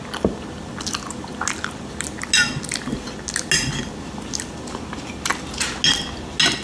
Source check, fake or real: real